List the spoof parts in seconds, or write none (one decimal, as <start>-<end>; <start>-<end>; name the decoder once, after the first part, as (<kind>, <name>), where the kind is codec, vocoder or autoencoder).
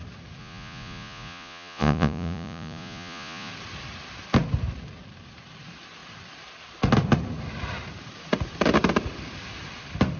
0.4-3.5 (vocoder, Vocos)